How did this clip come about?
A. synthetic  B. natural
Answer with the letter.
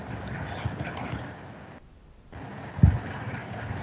B